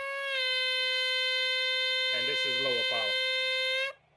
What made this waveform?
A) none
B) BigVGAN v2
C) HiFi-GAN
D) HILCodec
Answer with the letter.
A